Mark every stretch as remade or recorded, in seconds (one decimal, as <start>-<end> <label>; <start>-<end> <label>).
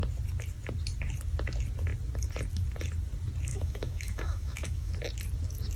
0.0-3.5 recorded; 3.5-4.9 remade; 4.9-5.8 recorded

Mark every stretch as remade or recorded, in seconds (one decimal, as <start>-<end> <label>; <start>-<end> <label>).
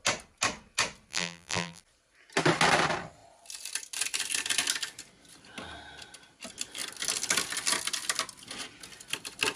0.0-1.1 recorded; 1.1-1.8 remade; 1.8-9.6 recorded